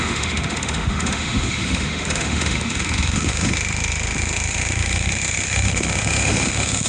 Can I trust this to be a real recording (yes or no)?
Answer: no